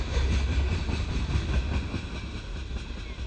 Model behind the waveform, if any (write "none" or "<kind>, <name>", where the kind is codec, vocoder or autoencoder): none